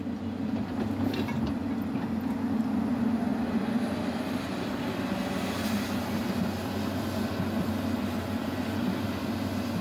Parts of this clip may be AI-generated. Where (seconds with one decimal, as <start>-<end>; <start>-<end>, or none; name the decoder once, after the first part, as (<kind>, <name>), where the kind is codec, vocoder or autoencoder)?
none